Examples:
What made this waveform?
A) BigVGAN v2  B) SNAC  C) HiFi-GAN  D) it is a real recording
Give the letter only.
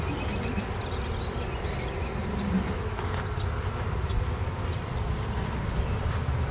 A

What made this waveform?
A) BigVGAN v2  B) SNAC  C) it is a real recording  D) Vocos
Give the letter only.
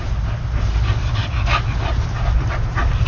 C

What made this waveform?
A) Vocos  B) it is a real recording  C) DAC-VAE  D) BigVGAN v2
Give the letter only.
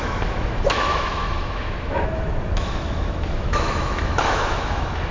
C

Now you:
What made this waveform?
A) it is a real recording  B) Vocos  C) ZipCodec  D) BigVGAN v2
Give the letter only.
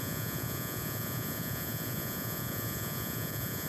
B